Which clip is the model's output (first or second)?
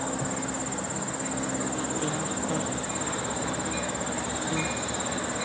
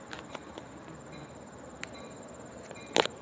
second